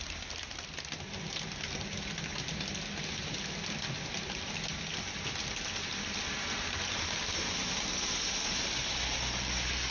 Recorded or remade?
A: recorded